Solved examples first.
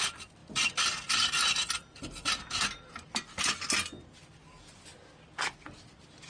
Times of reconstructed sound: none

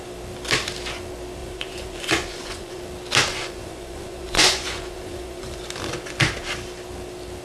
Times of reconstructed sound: 1.4-2.8 (vocoder, Vocos); 3.3-5.6

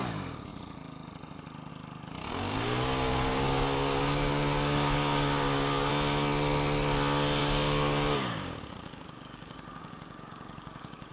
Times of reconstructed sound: 2.2-5.9 (codec, DAC); 7.4-11.1

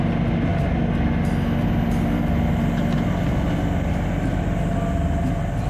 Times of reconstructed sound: none